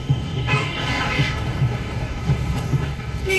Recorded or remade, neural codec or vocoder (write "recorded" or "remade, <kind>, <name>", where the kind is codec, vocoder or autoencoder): remade, codec, DAC